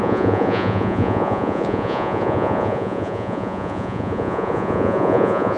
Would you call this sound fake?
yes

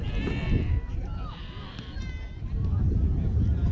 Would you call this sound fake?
no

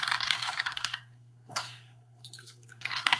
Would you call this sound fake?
yes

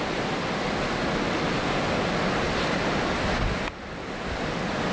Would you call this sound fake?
no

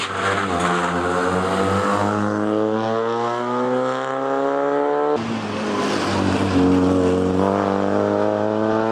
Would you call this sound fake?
no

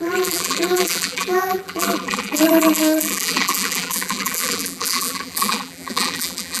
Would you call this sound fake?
yes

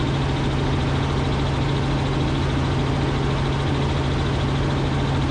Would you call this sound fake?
no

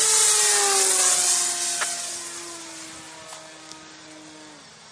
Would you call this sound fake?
no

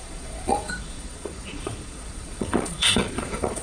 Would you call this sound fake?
yes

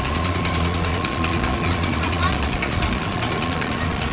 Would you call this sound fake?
yes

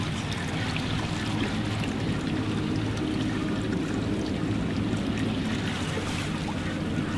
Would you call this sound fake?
no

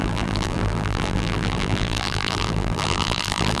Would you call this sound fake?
yes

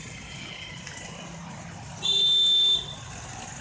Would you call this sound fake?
no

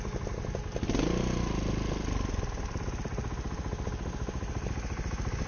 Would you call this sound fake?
no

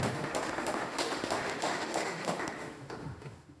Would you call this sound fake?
yes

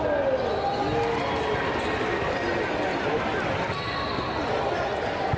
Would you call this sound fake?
no